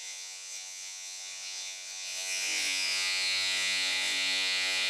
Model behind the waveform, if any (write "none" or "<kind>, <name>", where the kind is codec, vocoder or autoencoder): vocoder, Vocos